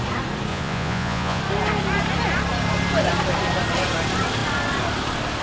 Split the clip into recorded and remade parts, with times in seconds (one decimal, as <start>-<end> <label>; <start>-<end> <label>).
0.0-0.5 recorded; 0.5-1.4 remade; 1.4-5.4 recorded